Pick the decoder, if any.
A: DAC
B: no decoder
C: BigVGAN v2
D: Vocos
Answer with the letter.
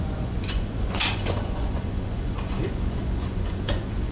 D